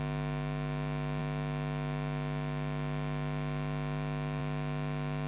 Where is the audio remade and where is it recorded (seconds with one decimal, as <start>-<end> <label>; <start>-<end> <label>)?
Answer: 0.0-5.3 recorded